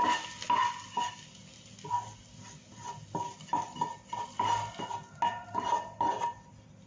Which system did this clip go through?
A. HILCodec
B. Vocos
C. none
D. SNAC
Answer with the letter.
C